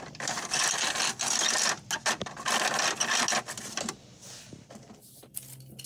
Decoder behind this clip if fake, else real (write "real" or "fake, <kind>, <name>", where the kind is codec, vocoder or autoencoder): real